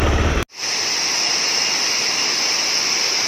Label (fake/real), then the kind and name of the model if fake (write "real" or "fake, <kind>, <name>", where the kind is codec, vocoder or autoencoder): real